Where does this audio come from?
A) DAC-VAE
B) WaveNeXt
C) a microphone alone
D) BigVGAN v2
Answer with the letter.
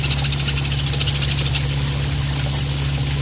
C